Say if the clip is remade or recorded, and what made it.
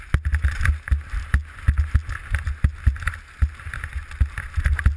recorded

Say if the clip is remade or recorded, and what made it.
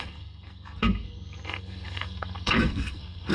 remade, codec, SNAC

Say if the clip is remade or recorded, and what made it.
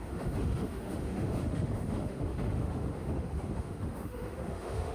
remade, autoencoder, DAC-VAE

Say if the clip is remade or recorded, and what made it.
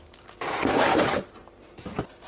remade, vocoder, BigVGAN v2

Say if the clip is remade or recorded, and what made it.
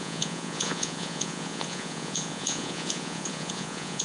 remade, vocoder, Vocos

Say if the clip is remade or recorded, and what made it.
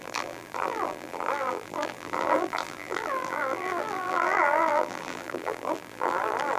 remade, vocoder, BigVGAN v2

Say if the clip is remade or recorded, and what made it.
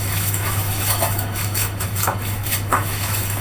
remade, autoencoder, DAC-VAE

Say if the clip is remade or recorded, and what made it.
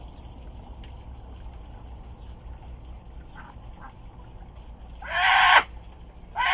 recorded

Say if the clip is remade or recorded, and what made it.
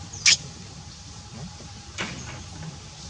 recorded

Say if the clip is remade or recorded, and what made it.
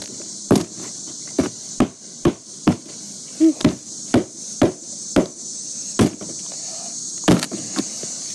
recorded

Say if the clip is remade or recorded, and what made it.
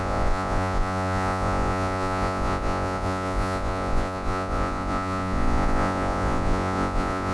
remade, vocoder, Vocos